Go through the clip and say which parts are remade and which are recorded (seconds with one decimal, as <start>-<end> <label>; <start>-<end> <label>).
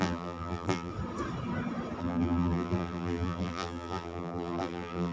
0.0-0.9 remade; 0.9-2.0 recorded; 2.0-5.1 remade